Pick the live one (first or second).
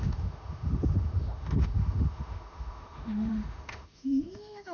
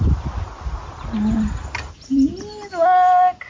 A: second